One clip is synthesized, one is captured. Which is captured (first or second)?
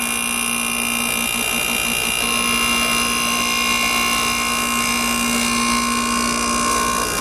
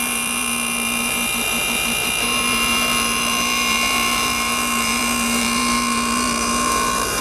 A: first